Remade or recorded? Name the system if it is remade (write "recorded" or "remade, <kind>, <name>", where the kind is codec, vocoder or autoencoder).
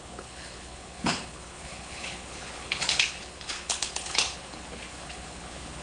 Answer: remade, codec, HILCodec